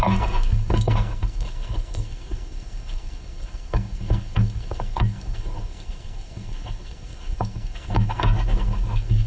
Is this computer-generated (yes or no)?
yes